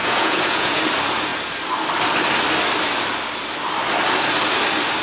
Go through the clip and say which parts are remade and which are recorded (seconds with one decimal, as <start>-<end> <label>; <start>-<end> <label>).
0.0-0.8 remade; 0.8-5.0 recorded